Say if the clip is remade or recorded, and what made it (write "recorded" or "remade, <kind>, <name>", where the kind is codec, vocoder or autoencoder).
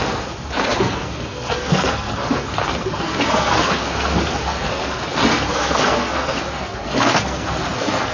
remade, codec, SNAC